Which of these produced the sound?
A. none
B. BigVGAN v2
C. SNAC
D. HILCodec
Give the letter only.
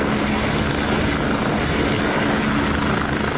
A